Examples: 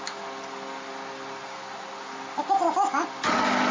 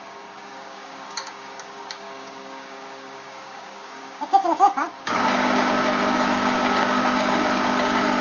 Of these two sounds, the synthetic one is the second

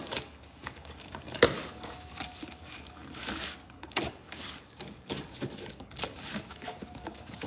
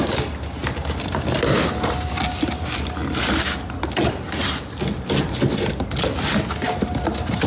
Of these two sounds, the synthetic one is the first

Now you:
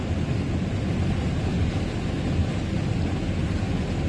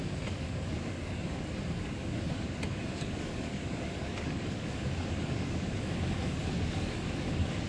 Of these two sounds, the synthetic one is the second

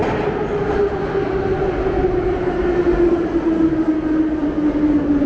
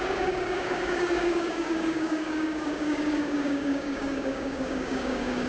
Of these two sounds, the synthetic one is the second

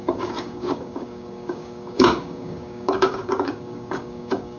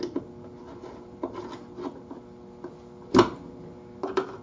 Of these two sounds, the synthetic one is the first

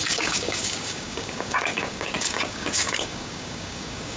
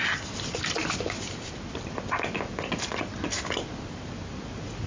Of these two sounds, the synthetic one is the first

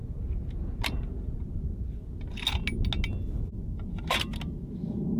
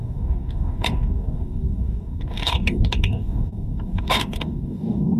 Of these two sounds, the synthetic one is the second